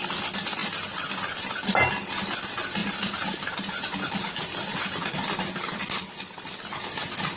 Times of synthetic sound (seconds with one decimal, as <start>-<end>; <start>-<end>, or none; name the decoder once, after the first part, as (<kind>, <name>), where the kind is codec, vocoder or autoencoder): none